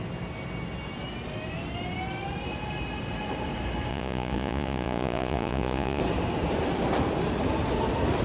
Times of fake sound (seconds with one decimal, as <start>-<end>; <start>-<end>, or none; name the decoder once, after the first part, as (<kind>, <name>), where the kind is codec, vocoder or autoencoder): 3.9-6.0 (vocoder, Vocos)